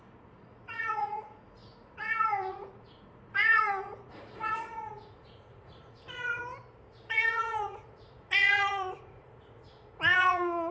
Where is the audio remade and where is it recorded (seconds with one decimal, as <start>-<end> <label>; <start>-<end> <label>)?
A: 0.0-6.4 remade; 6.4-6.9 recorded; 6.9-10.7 remade